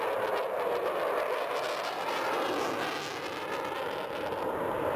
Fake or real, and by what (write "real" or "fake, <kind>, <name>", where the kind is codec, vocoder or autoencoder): real